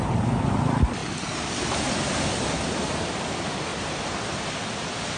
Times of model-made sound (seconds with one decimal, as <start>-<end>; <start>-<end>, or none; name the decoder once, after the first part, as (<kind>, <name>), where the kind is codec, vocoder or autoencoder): none